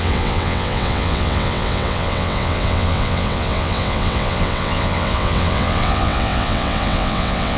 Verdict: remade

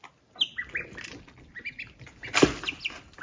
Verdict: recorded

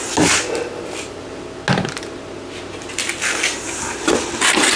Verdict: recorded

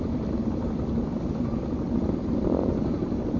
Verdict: recorded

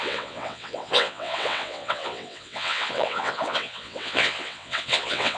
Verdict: remade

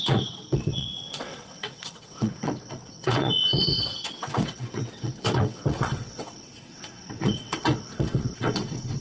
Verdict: remade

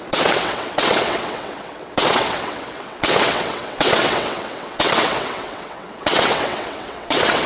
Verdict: remade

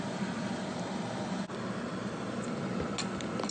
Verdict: recorded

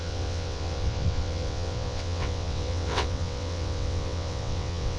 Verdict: remade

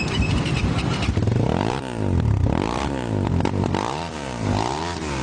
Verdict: recorded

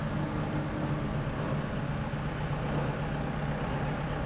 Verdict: recorded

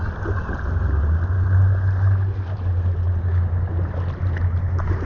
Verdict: recorded